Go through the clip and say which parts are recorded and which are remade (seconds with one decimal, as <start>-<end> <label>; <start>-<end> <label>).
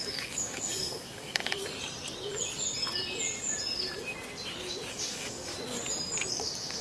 0.0-1.6 remade; 1.6-4.9 recorded; 4.9-5.5 remade; 5.5-6.3 recorded; 6.3-6.8 remade